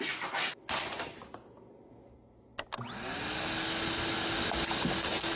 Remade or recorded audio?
recorded